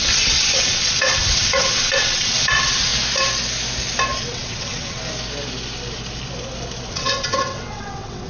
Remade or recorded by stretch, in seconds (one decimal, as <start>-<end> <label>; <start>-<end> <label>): 0.0-2.9 remade; 2.9-4.2 recorded; 4.2-5.0 remade; 5.0-6.9 recorded; 6.9-8.3 remade

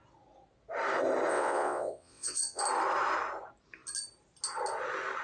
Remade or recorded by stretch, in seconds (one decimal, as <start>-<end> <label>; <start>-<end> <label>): 0.0-1.3 recorded; 1.3-2.6 remade; 2.6-5.2 recorded

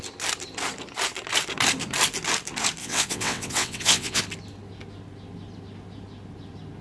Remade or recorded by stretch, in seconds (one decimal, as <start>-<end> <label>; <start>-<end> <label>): 0.0-2.8 recorded; 2.8-4.2 remade; 4.2-6.8 recorded

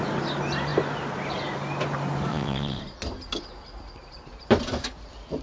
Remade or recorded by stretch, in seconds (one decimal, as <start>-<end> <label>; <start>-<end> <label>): 0.0-2.3 recorded; 2.3-2.8 remade; 2.8-5.4 recorded